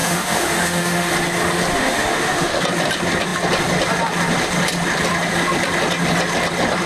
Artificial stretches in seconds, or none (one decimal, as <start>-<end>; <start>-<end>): 0.0-1.1; 1.7-2.6